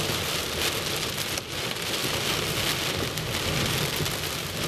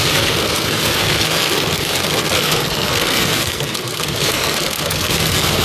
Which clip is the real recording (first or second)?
first